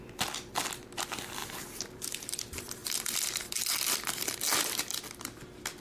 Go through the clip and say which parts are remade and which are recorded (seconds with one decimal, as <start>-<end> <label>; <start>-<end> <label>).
0.0-1.4 recorded; 1.4-2.3 remade; 2.3-5.8 recorded